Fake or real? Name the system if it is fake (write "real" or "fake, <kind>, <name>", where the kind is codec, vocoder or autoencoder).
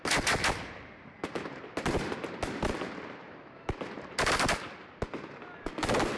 real